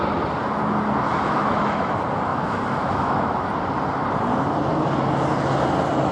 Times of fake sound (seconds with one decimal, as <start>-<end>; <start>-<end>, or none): 1.1-1.9; 2.3-3.5

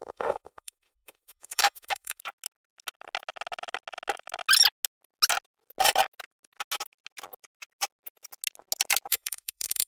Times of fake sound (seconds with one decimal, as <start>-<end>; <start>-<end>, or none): 0.0-2.2; 9.1-9.9

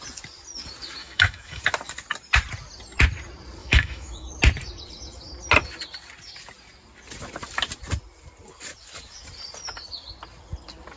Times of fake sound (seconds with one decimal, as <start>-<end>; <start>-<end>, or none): 1.0-1.6; 3.6-4.3

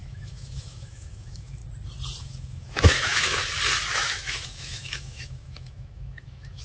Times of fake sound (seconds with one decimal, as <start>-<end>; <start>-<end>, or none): 0.0-1.6; 2.2-3.4; 3.9-6.6